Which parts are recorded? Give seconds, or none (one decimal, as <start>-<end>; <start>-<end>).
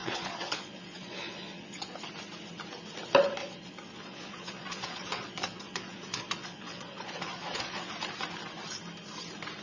2.0-3.4; 7.9-9.6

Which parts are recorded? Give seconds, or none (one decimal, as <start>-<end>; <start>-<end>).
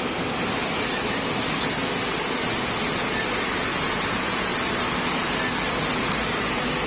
0.0-3.7; 4.5-6.9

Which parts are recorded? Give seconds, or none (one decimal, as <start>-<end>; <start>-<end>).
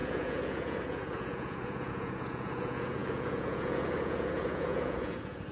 none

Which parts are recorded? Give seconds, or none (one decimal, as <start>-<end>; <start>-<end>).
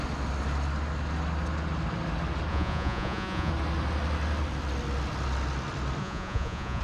0.0-2.5; 3.5-6.0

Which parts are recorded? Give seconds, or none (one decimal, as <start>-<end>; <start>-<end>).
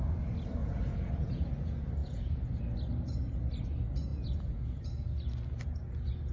0.0-0.6; 1.5-2.0; 2.5-4.1; 4.8-6.3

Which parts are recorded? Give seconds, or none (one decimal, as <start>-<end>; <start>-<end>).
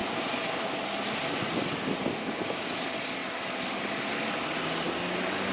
0.0-5.5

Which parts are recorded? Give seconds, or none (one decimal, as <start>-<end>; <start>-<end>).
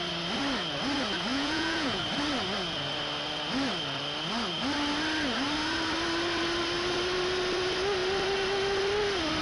0.0-1.3; 2.0-9.4